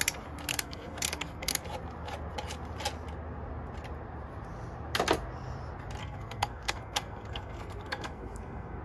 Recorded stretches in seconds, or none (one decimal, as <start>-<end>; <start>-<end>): 0.0-0.5; 1.6-6.0